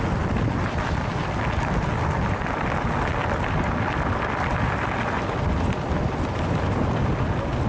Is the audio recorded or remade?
recorded